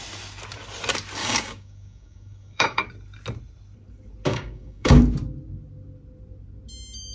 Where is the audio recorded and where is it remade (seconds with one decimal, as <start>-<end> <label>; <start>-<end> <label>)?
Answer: 0.0-1.2 recorded; 1.2-2.9 remade; 2.9-4.3 recorded; 4.3-5.0 remade; 5.0-7.1 recorded